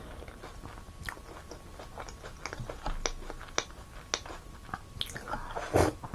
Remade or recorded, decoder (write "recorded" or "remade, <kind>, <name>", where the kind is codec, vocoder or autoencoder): recorded